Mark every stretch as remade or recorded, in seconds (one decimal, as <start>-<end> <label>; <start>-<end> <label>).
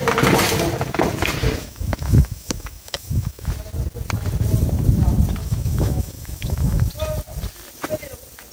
0.0-1.6 recorded; 1.6-3.5 remade; 3.5-5.4 recorded; 5.4-6.9 remade; 6.9-8.5 recorded